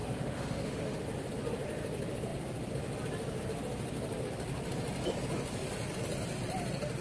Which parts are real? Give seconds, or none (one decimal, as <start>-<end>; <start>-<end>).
1.0-7.0